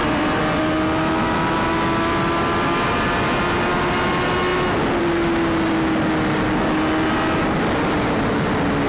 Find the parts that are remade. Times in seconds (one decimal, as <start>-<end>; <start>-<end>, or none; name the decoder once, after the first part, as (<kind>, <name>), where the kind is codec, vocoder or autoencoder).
0.0-0.6 (vocoder, BigVGAN v2)